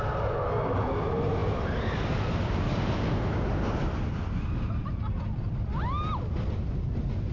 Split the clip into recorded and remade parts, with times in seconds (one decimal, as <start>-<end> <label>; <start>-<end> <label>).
0.0-7.3 recorded